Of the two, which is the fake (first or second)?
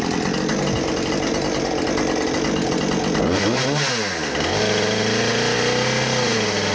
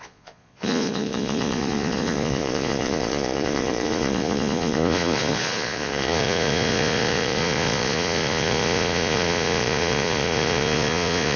second